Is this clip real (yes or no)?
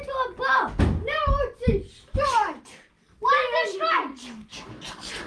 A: yes